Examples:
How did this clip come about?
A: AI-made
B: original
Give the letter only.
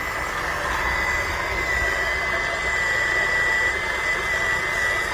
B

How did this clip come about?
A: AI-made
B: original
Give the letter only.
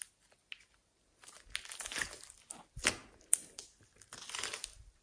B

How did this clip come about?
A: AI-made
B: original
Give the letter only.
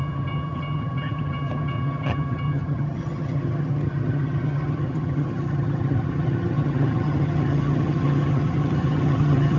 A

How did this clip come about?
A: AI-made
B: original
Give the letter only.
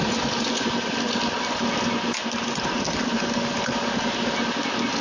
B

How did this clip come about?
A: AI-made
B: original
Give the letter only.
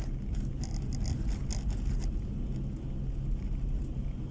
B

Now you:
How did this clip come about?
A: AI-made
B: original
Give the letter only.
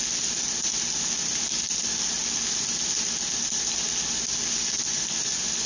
B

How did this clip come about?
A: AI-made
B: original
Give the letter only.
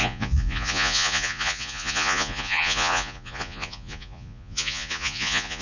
A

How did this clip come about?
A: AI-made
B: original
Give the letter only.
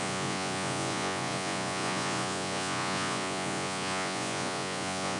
A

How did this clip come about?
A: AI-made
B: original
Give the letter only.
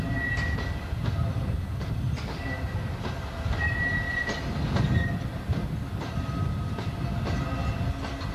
B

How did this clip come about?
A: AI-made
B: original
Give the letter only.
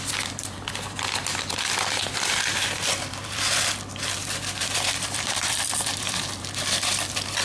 A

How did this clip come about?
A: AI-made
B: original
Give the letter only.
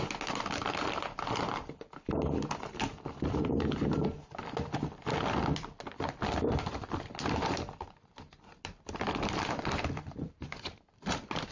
A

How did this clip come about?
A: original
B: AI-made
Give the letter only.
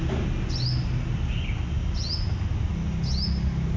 A